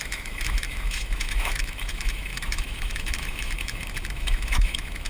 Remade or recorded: remade